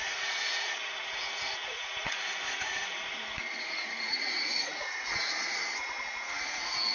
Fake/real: fake